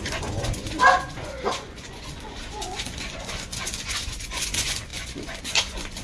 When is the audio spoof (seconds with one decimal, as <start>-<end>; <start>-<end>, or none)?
0.0-6.0